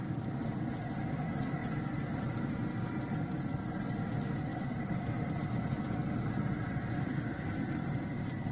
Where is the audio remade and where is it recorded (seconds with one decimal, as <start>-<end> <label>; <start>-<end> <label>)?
0.0-1.6 recorded; 1.6-4.1 remade; 4.1-4.5 recorded; 4.5-6.6 remade; 6.6-8.5 recorded